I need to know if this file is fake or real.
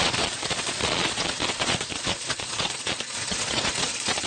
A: fake